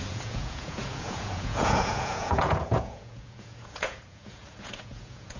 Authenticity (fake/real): fake